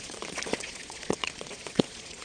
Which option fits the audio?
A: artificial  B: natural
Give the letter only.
A